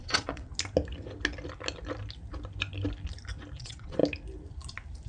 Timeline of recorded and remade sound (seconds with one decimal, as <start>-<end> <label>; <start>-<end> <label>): 0.0-0.5 remade; 0.5-3.6 recorded; 3.6-4.0 remade; 4.0-5.1 recorded